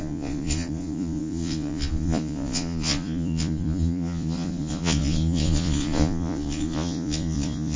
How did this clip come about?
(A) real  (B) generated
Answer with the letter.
B